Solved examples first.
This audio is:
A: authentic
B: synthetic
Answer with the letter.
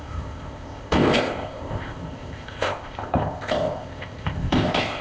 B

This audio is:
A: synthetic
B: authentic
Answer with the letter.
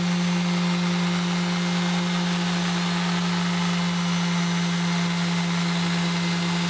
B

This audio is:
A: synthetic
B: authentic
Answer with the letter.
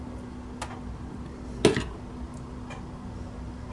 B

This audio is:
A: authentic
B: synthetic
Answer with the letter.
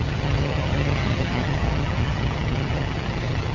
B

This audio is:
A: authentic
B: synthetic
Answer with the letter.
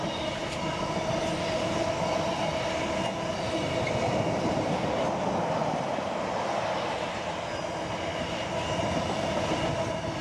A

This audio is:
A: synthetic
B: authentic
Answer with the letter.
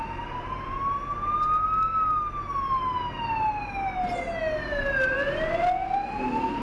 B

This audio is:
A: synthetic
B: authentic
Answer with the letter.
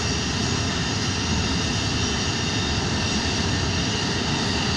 B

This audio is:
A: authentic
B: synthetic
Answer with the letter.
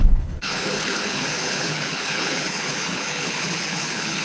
B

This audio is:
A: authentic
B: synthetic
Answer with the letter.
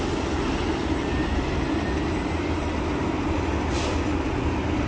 A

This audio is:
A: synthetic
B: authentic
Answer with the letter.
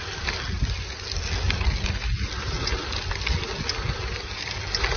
B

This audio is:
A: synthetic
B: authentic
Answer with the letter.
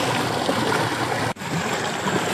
B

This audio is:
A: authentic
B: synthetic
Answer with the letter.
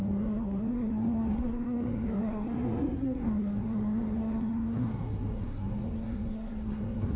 B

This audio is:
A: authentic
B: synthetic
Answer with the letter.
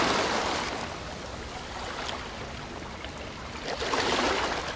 A